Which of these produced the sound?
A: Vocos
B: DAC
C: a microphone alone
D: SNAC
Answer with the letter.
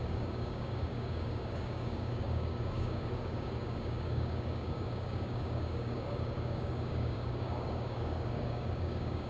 B